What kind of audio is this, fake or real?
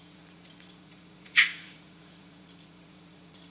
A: fake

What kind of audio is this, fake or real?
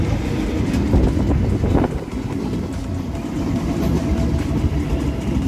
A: real